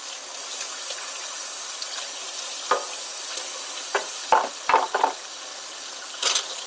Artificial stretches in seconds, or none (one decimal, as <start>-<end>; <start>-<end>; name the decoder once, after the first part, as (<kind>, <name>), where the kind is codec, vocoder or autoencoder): none